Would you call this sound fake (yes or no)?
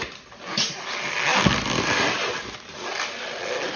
no